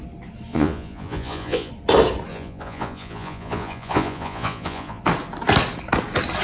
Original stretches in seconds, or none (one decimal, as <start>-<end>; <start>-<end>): 0.0-0.5; 1.7-2.3; 5.0-6.4